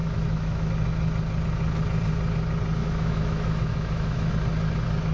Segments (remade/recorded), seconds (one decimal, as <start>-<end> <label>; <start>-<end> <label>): 0.0-0.7 remade; 0.7-2.8 recorded; 2.8-4.3 remade; 4.3-5.1 recorded